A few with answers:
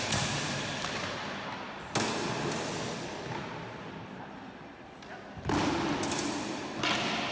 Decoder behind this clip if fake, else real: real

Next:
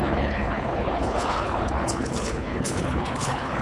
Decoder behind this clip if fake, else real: fake, codec, HILCodec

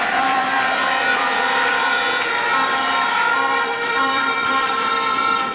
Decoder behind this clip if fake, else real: fake, vocoder, BigVGAN v2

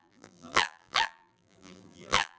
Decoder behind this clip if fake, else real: fake, vocoder, BigVGAN v2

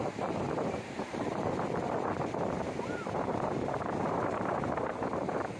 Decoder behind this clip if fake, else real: fake, vocoder, BigVGAN v2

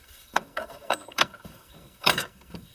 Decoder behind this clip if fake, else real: fake, codec, SNAC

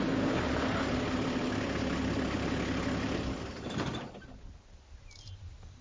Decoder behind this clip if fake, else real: real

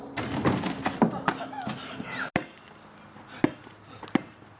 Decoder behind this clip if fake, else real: real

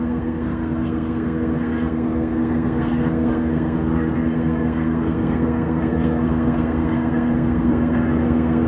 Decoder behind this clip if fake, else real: fake, codec, SNAC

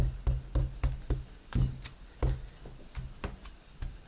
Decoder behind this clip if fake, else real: real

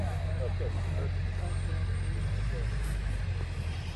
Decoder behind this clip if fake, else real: real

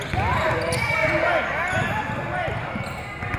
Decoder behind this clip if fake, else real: real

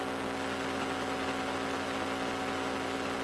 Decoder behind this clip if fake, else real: real